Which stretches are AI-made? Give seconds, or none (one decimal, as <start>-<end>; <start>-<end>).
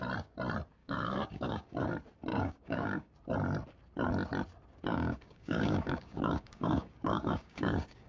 0.8-1.9; 2.3-3.1; 4.9-8.1